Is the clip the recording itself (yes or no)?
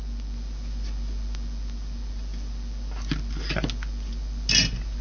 yes